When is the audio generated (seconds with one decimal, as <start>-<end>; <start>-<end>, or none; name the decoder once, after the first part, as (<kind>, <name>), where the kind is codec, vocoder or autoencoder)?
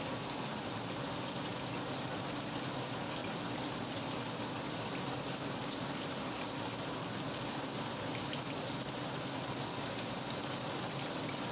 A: none